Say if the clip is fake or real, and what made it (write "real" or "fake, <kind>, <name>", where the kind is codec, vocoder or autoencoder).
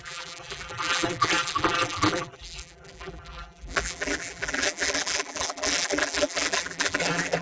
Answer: fake, vocoder, BigVGAN v2